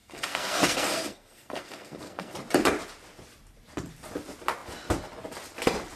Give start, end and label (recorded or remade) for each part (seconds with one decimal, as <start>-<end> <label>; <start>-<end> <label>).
0.0-2.3 remade; 2.3-6.0 recorded

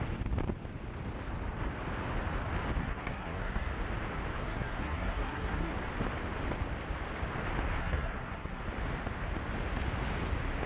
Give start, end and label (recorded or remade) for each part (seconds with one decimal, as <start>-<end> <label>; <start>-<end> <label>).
0.0-2.8 recorded; 2.8-3.7 remade; 3.7-4.4 recorded; 4.4-5.7 remade; 5.7-7.8 recorded; 7.8-8.6 remade; 8.6-10.7 recorded

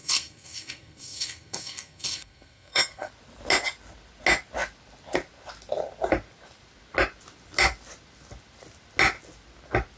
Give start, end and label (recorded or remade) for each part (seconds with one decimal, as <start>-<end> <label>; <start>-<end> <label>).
0.0-3.1 remade; 3.1-10.0 recorded

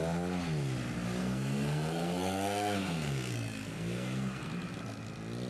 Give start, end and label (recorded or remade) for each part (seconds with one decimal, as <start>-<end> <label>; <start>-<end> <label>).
0.0-1.2 recorded; 1.2-4.5 remade; 4.5-5.5 recorded

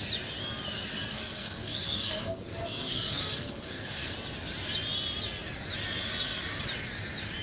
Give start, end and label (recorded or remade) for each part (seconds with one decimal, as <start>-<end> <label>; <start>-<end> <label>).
0.0-1.1 recorded; 1.1-4.1 remade; 4.1-7.4 recorded

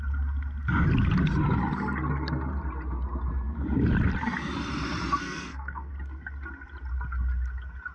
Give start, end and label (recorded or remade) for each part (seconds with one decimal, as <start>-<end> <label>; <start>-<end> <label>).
0.0-5.2 recorded; 5.2-5.9 remade; 5.9-7.9 recorded

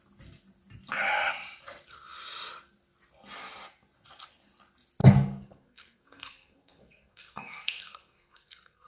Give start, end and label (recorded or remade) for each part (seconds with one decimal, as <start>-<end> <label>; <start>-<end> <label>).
0.0-5.0 recorded; 5.0-8.9 remade

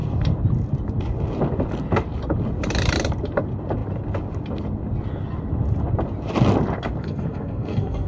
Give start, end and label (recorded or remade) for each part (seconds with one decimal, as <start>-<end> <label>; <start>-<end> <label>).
0.0-7.0 recorded; 7.0-8.1 remade